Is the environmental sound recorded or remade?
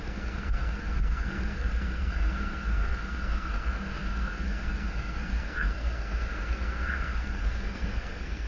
remade